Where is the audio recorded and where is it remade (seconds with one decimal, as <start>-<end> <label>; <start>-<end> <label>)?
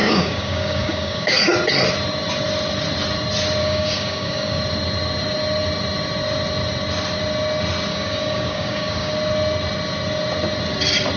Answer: 0.0-1.4 remade; 1.4-3.6 recorded; 3.6-4.6 remade; 4.6-7.9 recorded; 7.9-9.1 remade; 9.1-11.2 recorded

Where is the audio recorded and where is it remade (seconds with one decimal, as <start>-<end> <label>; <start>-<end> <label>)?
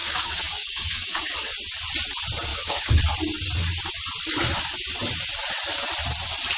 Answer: 0.0-1.2 remade; 1.2-2.5 recorded; 2.5-3.0 remade; 3.0-6.6 recorded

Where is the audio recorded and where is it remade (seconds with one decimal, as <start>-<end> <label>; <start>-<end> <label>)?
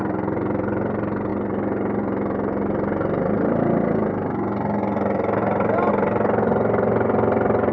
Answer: 0.0-7.7 recorded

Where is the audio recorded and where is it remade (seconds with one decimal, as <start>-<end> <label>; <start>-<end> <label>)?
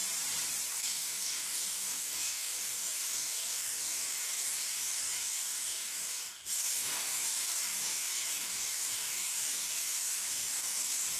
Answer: 0.0-0.7 recorded; 0.7-11.2 remade